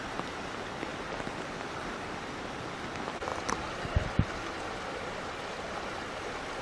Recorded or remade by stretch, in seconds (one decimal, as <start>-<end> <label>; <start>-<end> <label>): 0.0-6.6 recorded